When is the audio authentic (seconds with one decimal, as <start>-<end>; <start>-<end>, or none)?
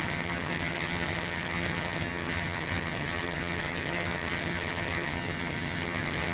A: none